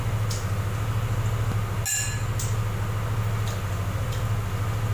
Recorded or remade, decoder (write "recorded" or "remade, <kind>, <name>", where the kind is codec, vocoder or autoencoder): recorded